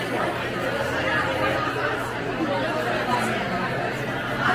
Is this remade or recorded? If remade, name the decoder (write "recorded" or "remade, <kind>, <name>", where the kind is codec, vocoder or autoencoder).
recorded